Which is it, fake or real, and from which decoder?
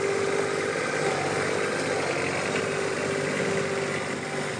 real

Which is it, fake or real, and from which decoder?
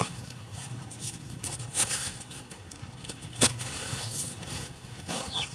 fake, codec, SNAC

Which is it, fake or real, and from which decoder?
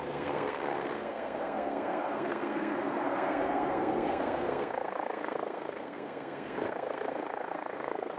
fake, codec, SNAC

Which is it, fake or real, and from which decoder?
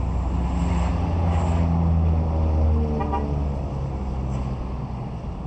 real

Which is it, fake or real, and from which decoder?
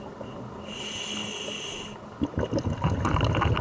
real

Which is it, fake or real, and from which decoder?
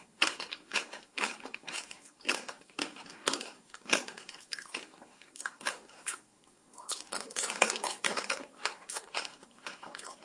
fake, codec, SNAC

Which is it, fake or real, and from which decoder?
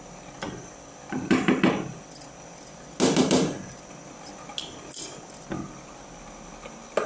real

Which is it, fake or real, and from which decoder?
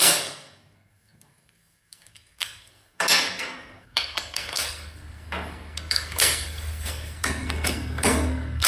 fake, codec, SNAC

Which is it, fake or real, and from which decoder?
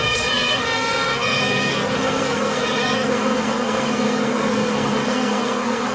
fake, codec, SNAC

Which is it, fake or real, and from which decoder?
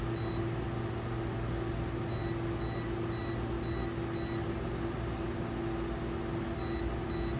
real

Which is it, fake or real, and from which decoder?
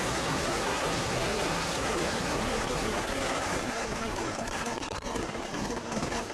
fake, codec, SNAC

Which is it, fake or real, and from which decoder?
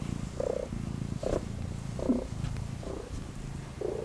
real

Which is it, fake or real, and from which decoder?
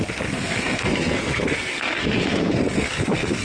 fake, codec, SNAC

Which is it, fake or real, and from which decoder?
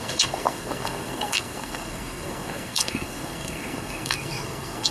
fake, codec, SNAC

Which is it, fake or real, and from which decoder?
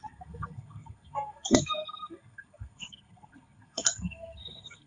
fake, codec, SNAC